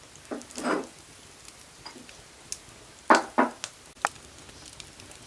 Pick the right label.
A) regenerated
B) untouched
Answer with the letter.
B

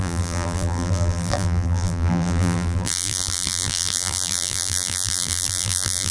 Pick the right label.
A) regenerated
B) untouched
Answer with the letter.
A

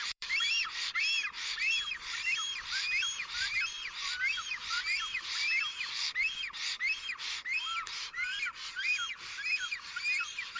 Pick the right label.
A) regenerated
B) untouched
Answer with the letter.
A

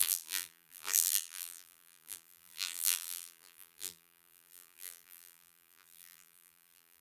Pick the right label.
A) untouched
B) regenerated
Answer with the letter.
B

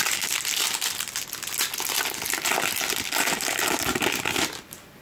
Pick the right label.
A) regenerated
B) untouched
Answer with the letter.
B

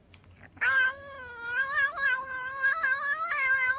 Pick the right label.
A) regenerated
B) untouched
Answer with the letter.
B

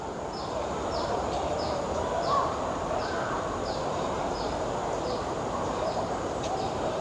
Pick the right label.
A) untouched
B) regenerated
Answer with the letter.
B